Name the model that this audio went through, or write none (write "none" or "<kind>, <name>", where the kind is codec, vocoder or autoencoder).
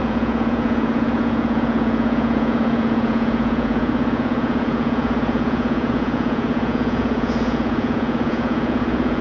vocoder, Vocos